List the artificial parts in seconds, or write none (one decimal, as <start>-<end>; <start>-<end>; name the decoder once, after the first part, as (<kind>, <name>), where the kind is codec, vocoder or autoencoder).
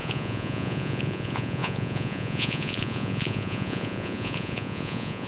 0.0-5.3 (vocoder, Vocos)